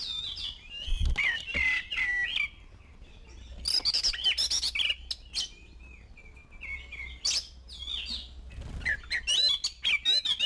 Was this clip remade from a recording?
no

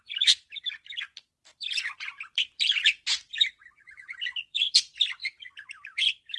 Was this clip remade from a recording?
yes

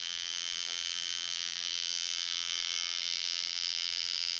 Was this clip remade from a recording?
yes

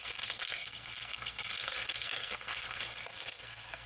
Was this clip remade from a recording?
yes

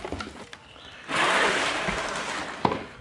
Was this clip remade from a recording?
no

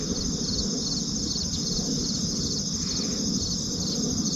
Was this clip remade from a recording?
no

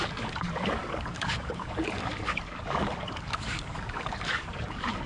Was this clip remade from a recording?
yes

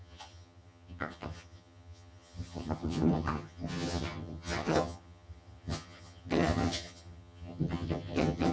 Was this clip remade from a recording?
yes